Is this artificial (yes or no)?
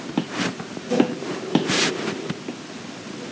no